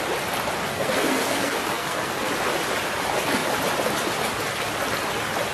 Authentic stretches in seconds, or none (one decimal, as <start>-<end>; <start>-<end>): 0.0-0.7; 2.3-5.5